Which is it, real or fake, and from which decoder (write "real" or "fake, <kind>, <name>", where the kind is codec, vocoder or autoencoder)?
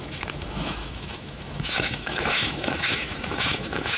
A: fake, autoencoder, DAC-VAE